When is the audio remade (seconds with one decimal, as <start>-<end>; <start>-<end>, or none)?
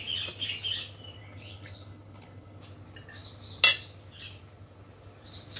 1.2-2.6